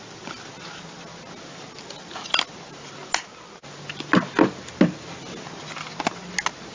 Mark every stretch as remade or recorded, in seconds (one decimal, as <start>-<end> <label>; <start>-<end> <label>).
0.0-6.7 recorded